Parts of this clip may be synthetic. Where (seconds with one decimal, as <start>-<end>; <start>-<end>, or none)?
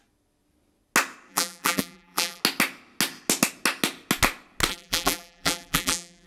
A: 1.3-2.4; 4.7-6.3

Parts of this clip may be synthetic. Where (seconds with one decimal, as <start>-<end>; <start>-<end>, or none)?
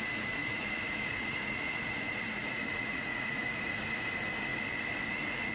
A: 0.4-3.7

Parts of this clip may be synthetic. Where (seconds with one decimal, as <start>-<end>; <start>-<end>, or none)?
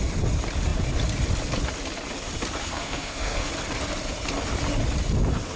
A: 2.6-3.5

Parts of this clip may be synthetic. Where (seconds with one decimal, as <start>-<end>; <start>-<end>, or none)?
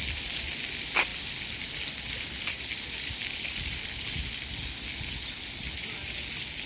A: none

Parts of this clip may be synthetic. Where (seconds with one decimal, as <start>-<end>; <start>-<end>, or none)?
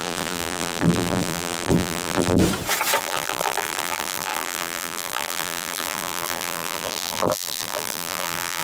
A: 0.0-2.4; 3.0-8.6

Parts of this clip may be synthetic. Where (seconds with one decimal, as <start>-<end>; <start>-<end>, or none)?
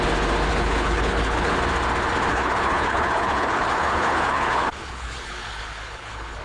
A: 0.5-1.5; 2.3-6.4